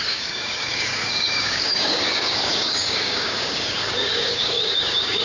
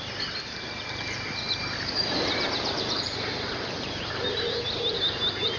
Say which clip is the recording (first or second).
second